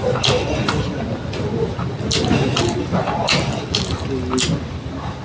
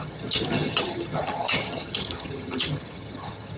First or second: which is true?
first